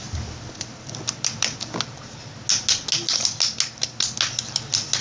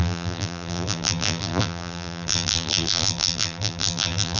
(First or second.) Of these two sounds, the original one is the first